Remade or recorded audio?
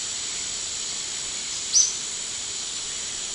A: recorded